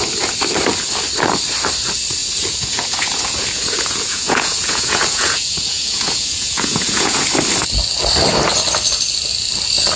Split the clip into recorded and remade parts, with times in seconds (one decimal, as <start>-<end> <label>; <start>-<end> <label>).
0.0-2.2 recorded; 2.2-7.3 remade; 7.3-10.0 recorded